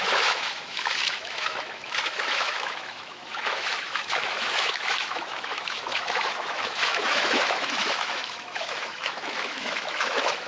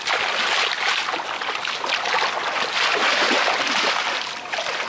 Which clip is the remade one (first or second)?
first